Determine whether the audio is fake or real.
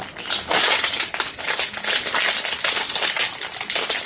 real